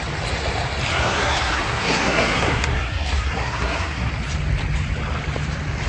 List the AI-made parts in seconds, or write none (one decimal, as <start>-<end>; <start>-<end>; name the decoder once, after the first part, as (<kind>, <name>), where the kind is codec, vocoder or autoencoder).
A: 0.9-4.1 (codec, SNAC)